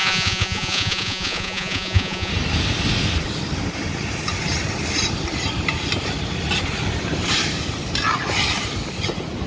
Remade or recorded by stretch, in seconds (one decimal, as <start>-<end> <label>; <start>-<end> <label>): 0.0-2.3 remade; 2.3-9.5 recorded